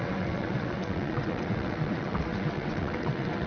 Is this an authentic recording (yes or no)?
no